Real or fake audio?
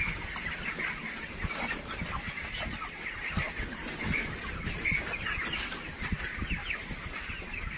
real